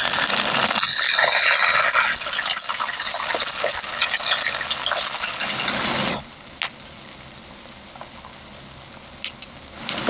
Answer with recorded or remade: recorded